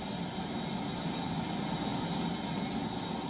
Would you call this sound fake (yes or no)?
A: no